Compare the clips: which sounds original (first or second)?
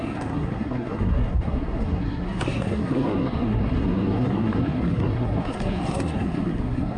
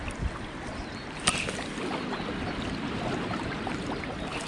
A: second